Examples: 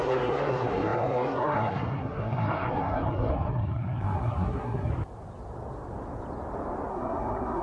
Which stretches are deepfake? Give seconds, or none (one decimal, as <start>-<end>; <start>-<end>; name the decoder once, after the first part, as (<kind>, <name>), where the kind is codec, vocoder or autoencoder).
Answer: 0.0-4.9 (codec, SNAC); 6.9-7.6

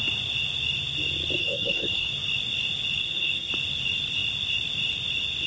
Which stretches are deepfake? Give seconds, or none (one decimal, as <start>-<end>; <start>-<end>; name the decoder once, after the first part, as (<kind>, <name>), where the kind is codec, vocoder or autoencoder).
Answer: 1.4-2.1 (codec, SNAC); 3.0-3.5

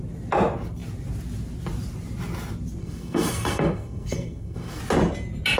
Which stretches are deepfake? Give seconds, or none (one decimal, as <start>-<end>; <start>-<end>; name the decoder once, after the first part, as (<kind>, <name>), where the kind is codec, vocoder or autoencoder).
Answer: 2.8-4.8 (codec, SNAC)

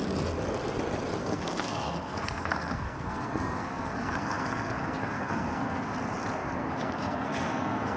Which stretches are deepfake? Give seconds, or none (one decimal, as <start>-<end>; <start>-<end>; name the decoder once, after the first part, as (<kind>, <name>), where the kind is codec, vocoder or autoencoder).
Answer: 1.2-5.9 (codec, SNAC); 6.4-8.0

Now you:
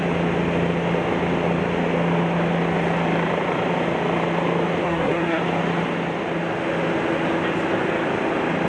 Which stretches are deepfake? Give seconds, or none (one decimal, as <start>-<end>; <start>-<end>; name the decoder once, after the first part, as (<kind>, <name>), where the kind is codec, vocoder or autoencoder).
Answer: 4.8-5.4 (codec, SNAC)